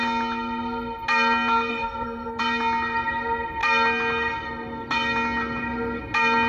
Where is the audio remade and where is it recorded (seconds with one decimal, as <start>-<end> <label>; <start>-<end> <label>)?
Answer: 0.0-1.7 recorded; 1.7-2.4 remade; 2.4-6.5 recorded